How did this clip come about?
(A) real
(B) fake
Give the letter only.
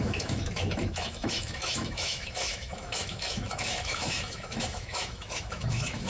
B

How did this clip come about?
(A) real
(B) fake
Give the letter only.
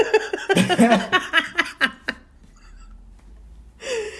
A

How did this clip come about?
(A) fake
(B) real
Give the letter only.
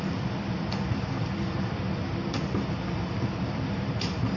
A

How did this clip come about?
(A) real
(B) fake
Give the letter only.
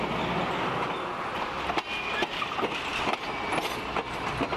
A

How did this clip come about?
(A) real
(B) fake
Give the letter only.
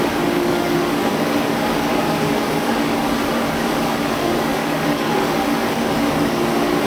B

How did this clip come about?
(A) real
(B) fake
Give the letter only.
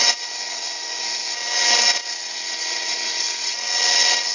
B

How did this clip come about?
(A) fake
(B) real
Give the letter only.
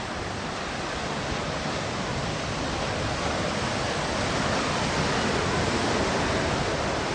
B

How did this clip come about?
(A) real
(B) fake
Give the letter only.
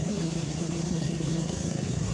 B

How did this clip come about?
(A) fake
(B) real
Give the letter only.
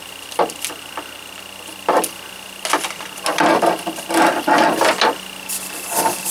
B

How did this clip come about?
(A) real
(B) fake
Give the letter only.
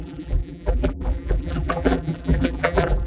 B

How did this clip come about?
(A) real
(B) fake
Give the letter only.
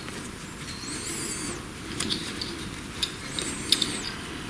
A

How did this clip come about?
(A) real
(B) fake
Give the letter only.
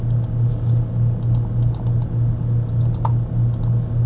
A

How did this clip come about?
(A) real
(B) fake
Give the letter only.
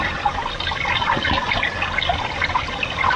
A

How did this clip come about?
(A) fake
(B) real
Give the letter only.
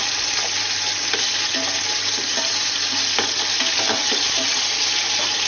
B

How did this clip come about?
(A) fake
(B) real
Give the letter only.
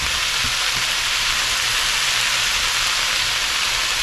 B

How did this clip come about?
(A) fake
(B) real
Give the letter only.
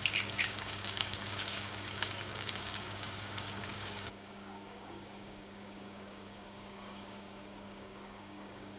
A